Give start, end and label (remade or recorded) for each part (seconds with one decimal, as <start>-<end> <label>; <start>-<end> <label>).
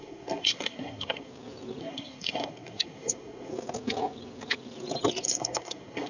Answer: 0.0-1.3 remade; 1.3-1.8 recorded; 1.8-3.5 remade; 3.5-5.2 recorded; 5.2-6.1 remade